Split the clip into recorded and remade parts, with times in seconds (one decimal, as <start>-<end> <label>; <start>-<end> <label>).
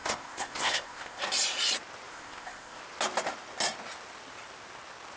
0.0-1.2 remade; 1.2-2.1 recorded; 2.1-2.8 remade; 2.8-5.2 recorded